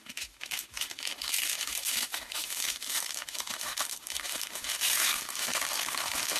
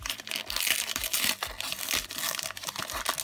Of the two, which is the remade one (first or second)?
first